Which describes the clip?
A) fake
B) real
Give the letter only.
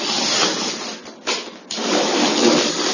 B